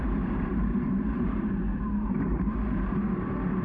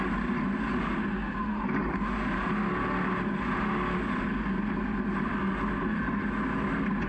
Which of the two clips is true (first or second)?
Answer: second